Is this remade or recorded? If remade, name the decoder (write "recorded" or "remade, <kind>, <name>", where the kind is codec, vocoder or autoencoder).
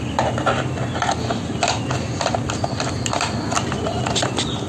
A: recorded